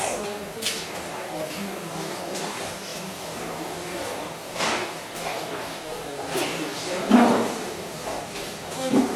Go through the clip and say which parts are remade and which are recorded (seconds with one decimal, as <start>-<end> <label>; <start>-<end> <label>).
0.0-9.2 remade